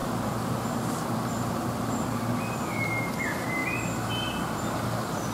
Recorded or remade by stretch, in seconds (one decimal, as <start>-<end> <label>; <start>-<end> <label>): 0.0-5.3 recorded